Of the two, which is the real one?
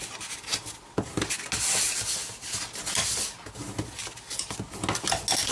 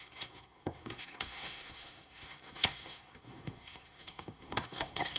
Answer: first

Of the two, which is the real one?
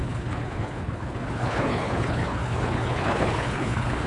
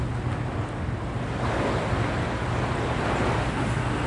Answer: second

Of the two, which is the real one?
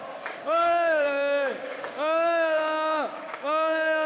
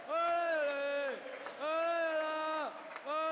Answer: second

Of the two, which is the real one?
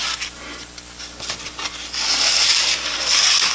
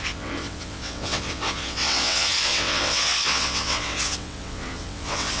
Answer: first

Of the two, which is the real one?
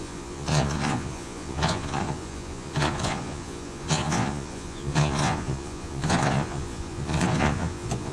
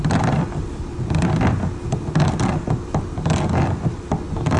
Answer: second